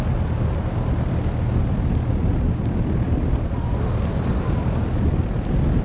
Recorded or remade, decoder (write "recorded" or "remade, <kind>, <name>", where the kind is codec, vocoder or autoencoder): recorded